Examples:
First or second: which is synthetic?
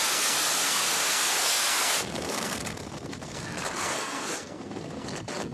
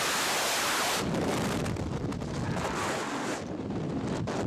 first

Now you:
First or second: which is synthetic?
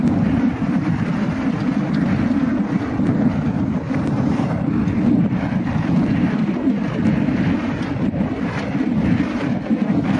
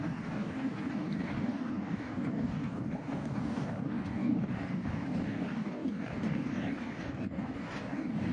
second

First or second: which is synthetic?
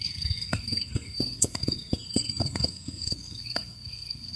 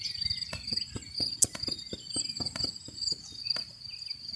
first